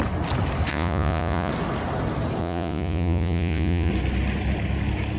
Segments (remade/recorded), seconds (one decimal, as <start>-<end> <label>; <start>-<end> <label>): 0.0-0.7 recorded; 0.7-1.5 remade; 1.5-2.4 recorded; 2.4-3.9 remade; 3.9-5.2 recorded